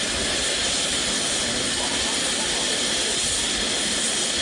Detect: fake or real real